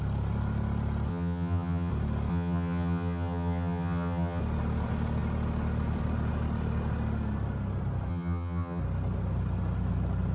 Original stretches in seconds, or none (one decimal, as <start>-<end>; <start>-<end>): 0.0-1.1; 1.9-2.3; 4.4-8.1; 8.8-10.3